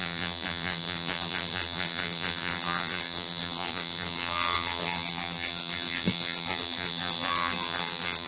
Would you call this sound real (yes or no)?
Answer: no